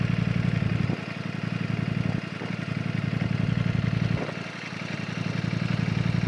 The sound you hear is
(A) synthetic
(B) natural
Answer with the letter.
B